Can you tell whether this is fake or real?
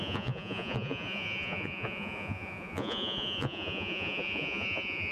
fake